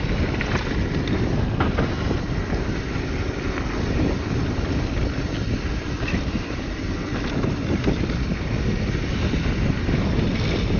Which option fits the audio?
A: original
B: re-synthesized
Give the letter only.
A